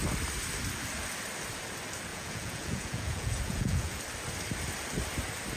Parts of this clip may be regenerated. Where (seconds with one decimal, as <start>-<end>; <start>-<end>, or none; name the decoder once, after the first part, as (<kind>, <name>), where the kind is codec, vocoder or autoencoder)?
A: 2.1-4.0 (vocoder, Vocos)